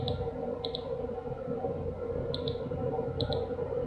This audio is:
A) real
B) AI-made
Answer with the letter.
A